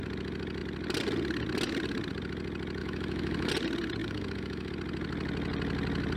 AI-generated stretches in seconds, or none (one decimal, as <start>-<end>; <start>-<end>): 2.8-3.5; 4.0-4.7